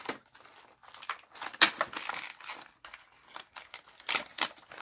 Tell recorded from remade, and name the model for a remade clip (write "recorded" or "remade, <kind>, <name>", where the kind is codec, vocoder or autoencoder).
recorded